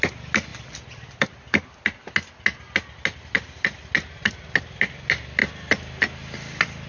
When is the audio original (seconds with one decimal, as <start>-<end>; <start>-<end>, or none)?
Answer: 0.0-6.9